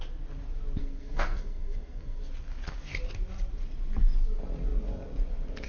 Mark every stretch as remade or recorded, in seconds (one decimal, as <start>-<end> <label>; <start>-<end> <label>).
0.0-0.8 recorded; 0.8-2.2 remade; 2.2-5.7 recorded